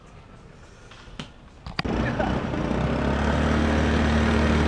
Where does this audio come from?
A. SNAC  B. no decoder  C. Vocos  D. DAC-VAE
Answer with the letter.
B